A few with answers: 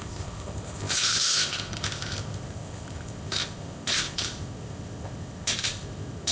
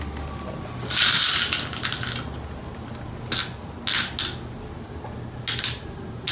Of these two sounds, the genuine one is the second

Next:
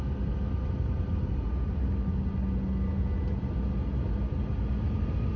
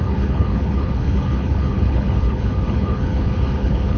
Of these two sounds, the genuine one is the first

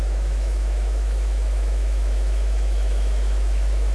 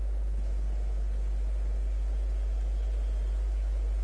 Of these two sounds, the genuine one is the second